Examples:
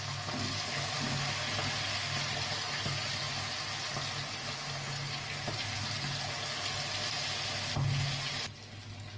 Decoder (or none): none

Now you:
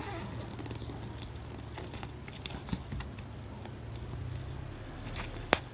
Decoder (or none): none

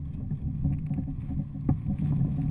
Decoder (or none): none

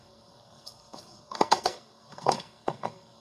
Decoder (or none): codec, SNAC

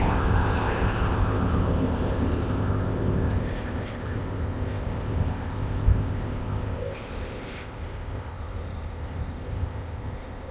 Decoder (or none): codec, ZipCodec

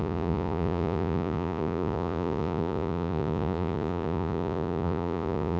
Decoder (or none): vocoder, Vocos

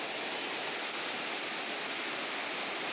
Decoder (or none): none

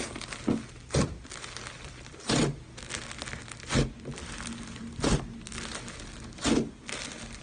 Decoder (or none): none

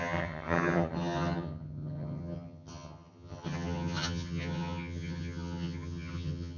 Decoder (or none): vocoder, HiFi-GAN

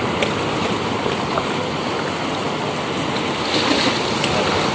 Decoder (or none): none